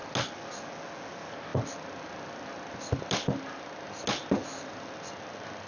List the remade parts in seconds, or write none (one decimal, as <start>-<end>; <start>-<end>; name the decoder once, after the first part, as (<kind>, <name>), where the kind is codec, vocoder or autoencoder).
none